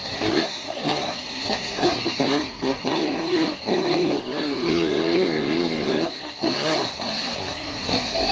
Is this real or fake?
fake